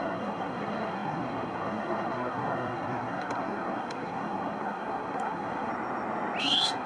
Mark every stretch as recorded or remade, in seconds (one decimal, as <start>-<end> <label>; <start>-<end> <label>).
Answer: 0.0-5.7 remade; 5.7-6.4 recorded; 6.4-6.9 remade